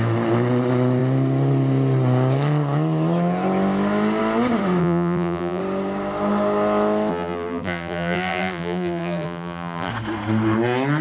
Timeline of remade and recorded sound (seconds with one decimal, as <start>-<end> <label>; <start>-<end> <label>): 0.0-4.8 recorded; 4.8-5.6 remade; 5.6-7.1 recorded; 7.1-9.9 remade; 9.9-11.0 recorded

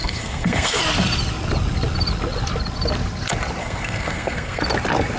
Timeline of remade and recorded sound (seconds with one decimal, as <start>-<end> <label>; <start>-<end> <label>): 0.0-0.8 remade; 0.8-3.6 recorded; 3.6-4.6 remade; 4.6-5.2 recorded

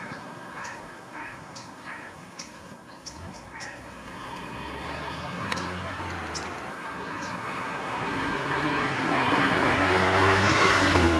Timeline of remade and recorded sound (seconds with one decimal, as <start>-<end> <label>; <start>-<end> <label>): 0.0-6.0 remade; 6.0-6.7 recorded; 6.7-11.2 remade

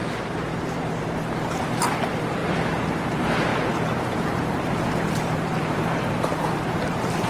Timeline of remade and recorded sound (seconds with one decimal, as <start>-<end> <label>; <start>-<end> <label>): 0.0-2.4 remade; 2.4-3.0 recorded; 3.0-3.5 remade; 3.5-4.2 recorded; 4.2-7.3 remade

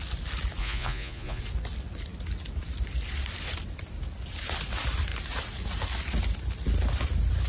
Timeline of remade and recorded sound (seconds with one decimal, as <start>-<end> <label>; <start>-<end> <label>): 0.0-0.6 recorded; 0.6-1.4 remade; 1.4-7.5 recorded